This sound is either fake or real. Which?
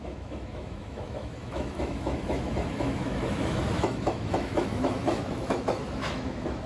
fake